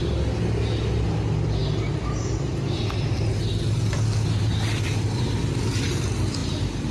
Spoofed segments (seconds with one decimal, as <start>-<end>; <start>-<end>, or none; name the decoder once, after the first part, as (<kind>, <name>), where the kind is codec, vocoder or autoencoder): 1.6-2.8 (vocoder, BigVGAN v2); 6.4-6.9